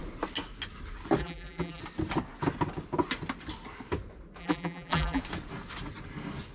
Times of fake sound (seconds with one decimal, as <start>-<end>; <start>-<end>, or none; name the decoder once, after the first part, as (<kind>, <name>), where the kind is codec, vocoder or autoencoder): 1.2-1.8 (vocoder, BigVGAN v2); 4.4-5.2

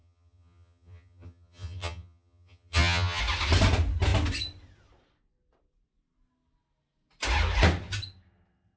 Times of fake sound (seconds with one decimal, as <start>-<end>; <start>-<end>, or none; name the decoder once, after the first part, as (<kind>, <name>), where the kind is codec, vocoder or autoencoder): 0.0-3.2 (vocoder, HiFi-GAN)

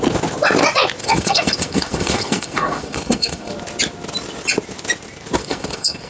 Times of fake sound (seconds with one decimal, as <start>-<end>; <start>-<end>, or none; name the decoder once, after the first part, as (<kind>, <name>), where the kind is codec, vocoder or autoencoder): 1.0-3.5 (codec, SNAC); 5.4-6.1

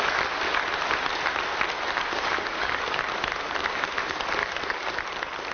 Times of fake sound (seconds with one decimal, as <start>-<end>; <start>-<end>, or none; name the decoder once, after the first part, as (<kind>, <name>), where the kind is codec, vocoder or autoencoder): 2.3-3.0 (codec, DAC); 4.4-5.0

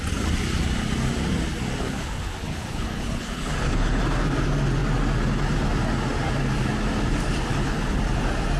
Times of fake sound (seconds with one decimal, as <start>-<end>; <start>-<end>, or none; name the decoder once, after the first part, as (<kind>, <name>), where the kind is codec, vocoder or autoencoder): 1.8-4.0 (codec, HILCodec); 7.5-8.0

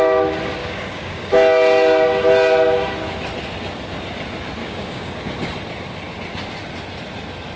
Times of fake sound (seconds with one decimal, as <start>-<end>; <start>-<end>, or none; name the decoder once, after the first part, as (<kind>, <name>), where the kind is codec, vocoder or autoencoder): 0.6-1.3 (codec, DAC); 4.6-5.3